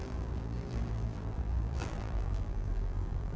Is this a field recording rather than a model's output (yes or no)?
no